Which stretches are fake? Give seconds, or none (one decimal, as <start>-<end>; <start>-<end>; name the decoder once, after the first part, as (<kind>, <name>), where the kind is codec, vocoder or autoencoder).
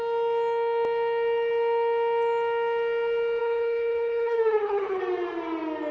3.4-5.0 (codec, HILCodec)